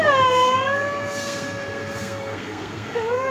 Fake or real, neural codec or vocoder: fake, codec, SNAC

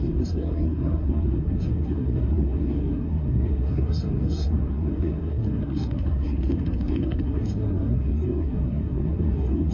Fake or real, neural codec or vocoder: fake, codec, SNAC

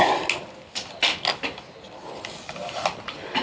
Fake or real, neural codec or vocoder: real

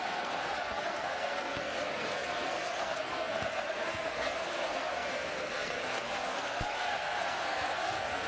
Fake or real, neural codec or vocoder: fake, codec, SNAC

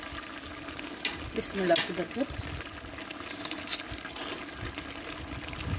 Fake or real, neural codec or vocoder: real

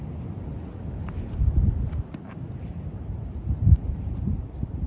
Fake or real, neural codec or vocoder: real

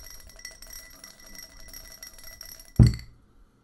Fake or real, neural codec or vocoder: real